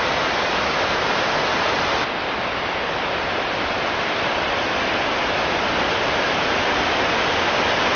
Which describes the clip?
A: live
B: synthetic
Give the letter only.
A